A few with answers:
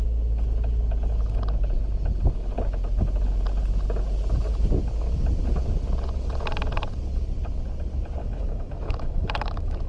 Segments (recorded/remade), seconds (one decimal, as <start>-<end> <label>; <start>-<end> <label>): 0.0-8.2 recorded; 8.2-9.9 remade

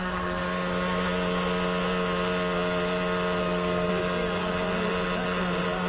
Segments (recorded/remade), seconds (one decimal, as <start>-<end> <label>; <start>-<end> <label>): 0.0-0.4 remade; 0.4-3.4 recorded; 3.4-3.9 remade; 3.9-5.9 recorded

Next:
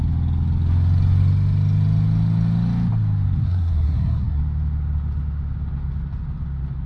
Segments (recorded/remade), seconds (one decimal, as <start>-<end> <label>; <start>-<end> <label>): 0.0-3.4 recorded; 3.4-4.4 remade; 4.4-6.9 recorded

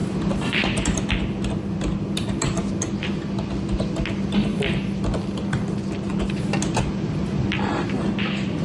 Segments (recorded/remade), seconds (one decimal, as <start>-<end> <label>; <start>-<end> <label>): 0.0-1.5 remade; 1.5-8.6 recorded